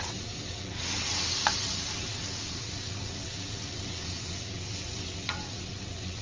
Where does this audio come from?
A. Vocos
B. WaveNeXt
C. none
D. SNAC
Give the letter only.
B